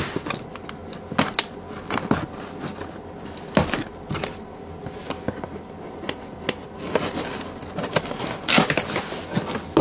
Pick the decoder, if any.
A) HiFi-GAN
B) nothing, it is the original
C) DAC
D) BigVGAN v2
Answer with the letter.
B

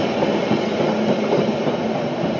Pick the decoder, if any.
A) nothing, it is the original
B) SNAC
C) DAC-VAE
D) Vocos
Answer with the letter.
A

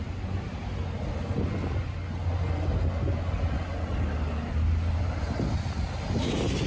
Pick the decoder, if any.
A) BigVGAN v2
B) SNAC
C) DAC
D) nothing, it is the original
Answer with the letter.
D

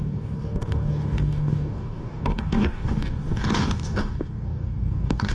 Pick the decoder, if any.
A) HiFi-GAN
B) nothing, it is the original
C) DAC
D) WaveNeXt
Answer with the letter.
C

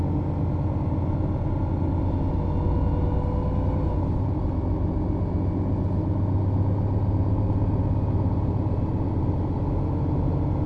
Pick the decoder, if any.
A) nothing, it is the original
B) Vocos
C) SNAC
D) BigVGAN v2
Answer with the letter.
A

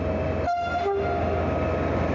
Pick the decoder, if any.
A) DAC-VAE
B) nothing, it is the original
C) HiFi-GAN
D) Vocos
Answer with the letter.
B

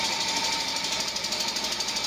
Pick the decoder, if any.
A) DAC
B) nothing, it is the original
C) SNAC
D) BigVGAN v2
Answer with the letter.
B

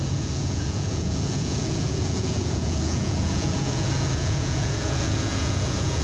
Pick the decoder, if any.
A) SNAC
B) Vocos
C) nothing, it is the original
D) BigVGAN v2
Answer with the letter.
B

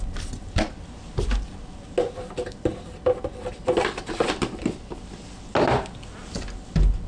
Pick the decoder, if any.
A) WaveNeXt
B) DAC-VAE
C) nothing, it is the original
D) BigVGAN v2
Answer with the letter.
C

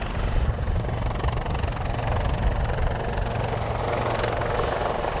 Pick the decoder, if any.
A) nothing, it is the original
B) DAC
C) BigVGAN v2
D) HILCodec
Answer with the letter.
A